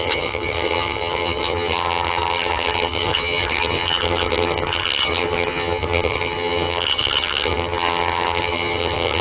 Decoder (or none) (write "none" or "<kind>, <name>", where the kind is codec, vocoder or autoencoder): vocoder, HiFi-GAN